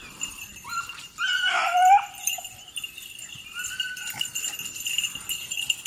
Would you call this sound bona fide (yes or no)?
yes